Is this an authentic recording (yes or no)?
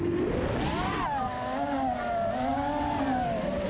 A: yes